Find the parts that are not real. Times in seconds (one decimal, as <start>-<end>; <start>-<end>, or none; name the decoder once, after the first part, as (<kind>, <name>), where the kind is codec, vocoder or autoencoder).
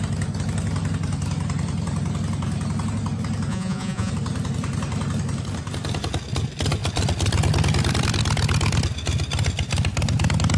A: 3.5-4.1 (vocoder, Vocos)